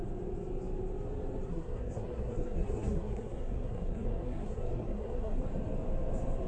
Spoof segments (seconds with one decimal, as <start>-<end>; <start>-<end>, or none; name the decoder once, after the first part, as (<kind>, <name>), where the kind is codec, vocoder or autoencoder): 1.5-5.4 (codec, SNAC)